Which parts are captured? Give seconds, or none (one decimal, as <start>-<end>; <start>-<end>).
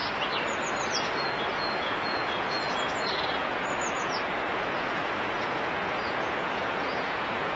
0.0-1.4